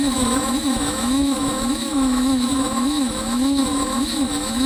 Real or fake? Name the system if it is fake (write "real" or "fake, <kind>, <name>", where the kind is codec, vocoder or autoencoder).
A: fake, autoencoder, DAC-VAE